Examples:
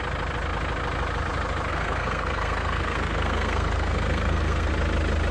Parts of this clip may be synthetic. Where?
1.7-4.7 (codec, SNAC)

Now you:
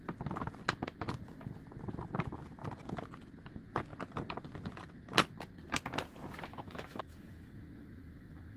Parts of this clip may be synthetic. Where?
6.5-8.6 (autoencoder, DAC-VAE)

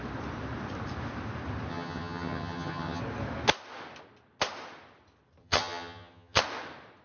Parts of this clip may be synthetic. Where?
1.7-3.0 (vocoder, HiFi-GAN); 5.4-6.4

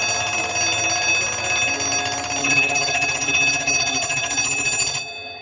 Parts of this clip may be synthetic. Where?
2.4-5.4 (vocoder, HiFi-GAN)

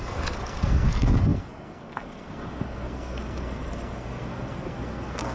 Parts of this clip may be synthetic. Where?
0.0-5.3 (codec, SNAC)

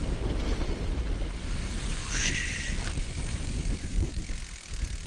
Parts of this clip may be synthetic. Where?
1.4-2.3 (vocoder, Vocos); 3.0-4.2

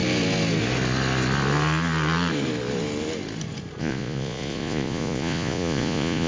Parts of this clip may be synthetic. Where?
3.8-6.3 (vocoder, Vocos)

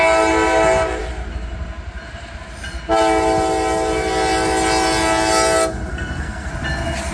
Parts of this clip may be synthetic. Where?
5.9-6.5 (codec, SNAC)